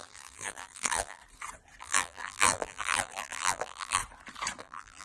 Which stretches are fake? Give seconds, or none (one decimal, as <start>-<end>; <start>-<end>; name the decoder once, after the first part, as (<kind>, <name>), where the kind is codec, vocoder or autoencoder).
0.0-1.2 (vocoder, BigVGAN v2); 1.8-4.0; 4.6-5.0